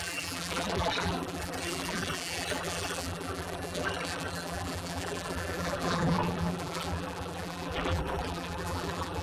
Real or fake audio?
fake